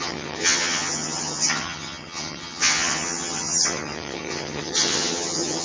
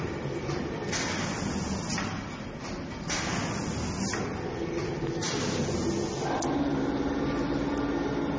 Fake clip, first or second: first